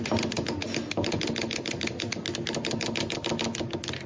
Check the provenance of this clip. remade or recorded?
recorded